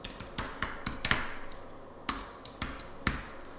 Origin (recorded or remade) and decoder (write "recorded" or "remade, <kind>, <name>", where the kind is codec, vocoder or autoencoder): recorded